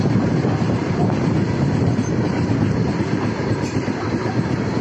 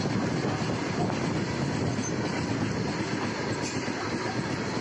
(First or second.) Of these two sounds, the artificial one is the first